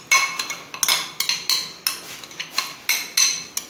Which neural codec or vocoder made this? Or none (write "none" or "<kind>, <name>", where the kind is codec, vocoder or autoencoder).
none